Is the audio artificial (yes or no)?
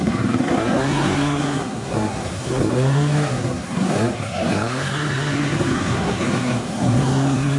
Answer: yes